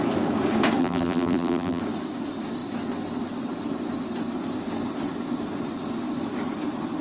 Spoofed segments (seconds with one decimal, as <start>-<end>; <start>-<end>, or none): 0.8-1.8